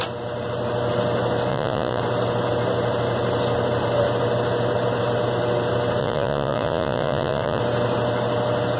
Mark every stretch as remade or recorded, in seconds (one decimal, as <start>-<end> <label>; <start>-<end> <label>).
0.0-1.5 recorded; 1.5-2.0 remade; 2.0-6.0 recorded; 6.0-7.6 remade; 7.6-8.8 recorded